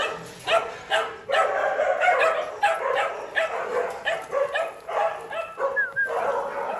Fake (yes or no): no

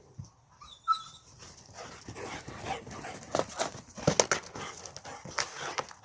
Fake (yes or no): no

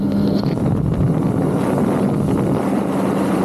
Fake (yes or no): no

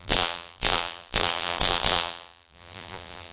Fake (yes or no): yes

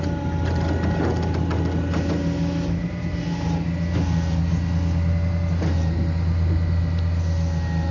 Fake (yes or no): no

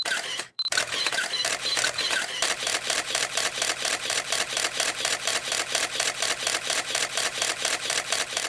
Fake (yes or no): yes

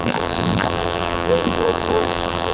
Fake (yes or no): yes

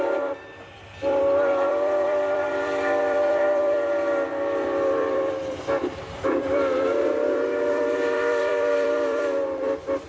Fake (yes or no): yes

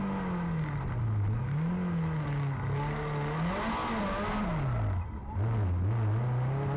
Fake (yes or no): no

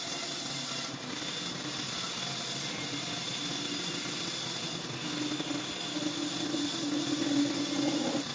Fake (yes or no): no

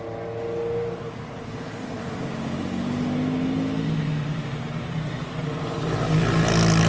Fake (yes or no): no